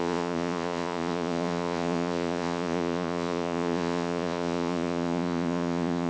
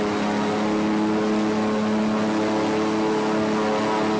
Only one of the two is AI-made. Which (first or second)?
first